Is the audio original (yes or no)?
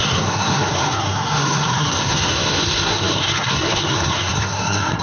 no